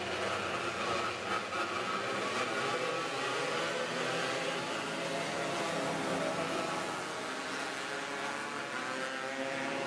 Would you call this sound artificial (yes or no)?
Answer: no